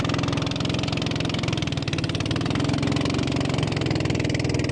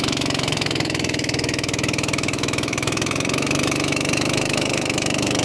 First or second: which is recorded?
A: first